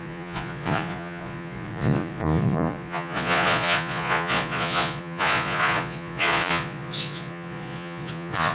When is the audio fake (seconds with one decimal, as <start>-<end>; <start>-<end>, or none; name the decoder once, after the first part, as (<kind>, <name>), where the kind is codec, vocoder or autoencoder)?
0.0-8.5 (vocoder, Vocos)